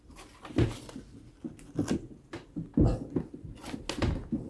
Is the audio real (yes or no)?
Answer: yes